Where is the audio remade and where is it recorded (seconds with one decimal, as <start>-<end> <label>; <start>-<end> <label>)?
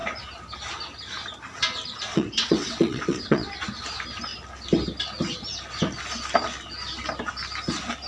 0.0-2.1 recorded; 2.1-3.5 remade; 3.5-8.1 recorded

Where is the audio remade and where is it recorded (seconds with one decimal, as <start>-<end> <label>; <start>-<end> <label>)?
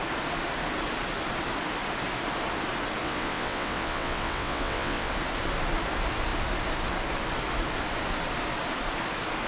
0.0-3.0 recorded; 3.0-5.1 remade; 5.1-9.5 recorded